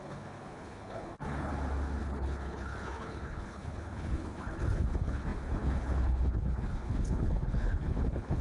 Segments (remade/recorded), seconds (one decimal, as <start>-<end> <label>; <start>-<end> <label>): 0.0-1.5 remade; 1.5-2.0 recorded; 2.0-8.4 remade